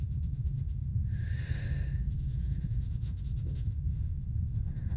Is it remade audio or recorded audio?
remade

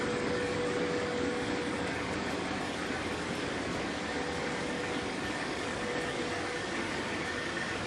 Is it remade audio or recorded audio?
remade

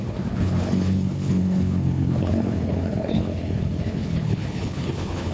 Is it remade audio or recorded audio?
remade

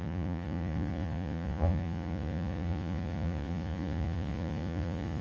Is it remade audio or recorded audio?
remade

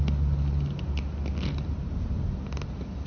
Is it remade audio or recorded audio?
recorded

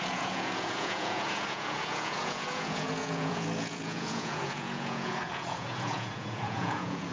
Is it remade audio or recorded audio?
remade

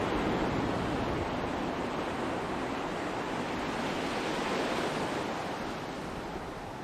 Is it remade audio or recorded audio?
recorded